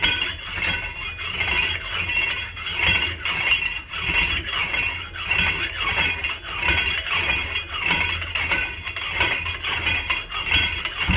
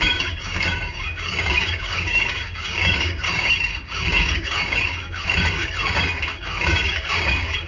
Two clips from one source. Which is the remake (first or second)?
second